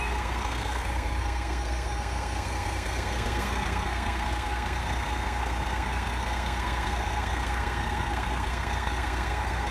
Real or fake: fake